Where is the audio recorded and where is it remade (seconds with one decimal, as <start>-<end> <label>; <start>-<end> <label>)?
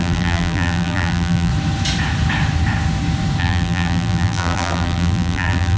0.0-1.5 remade; 1.5-3.4 recorded; 3.4-5.8 remade